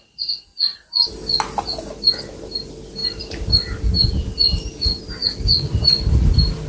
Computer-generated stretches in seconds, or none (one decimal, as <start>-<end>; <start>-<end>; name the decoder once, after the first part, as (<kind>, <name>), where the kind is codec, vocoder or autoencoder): none